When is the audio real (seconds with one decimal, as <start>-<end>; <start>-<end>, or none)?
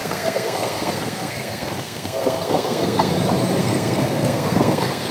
3.1-3.6